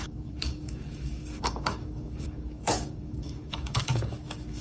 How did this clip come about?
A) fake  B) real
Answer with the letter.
A